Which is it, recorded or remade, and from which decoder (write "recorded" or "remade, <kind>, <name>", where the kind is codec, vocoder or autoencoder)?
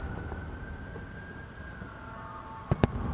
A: recorded